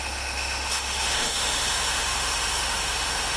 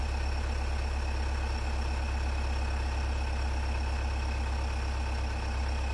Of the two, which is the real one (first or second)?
second